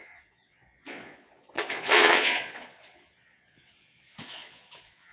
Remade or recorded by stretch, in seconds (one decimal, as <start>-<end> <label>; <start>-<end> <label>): 0.0-5.1 remade